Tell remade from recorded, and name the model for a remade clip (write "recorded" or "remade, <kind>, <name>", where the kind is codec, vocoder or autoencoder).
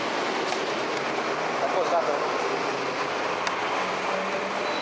recorded